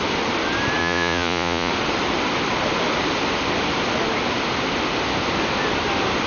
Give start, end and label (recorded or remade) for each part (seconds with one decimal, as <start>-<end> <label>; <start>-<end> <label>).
0.0-0.8 recorded; 0.8-1.7 remade; 1.7-6.3 recorded